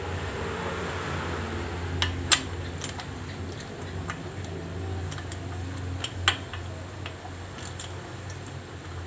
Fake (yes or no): no